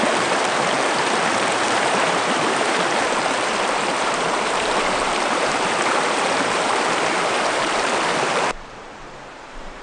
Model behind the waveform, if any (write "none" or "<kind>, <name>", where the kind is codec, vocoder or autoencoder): vocoder, BigVGAN v2